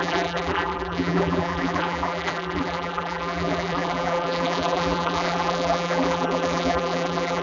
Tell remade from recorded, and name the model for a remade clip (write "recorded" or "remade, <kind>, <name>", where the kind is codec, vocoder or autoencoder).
remade, vocoder, BigVGAN v2